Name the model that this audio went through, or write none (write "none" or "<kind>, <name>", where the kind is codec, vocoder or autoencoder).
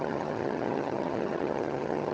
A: vocoder, HiFi-GAN